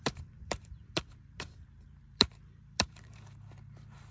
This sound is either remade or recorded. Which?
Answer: remade